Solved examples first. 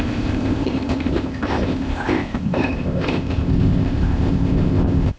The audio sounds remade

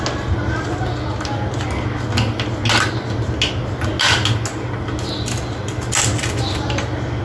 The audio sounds recorded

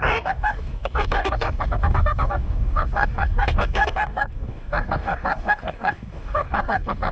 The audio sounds remade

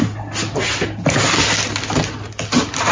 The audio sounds recorded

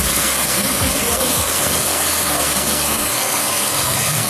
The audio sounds remade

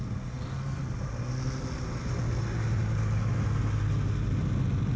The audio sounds recorded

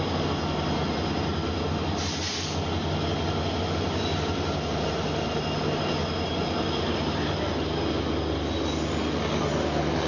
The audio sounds recorded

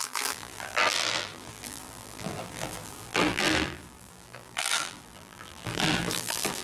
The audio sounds remade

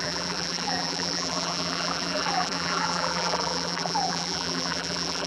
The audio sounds remade